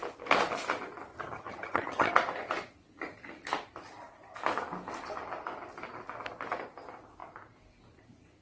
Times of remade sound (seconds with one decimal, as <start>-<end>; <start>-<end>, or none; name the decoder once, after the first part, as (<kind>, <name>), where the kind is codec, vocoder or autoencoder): 1.1-2.1 (vocoder, HiFi-GAN)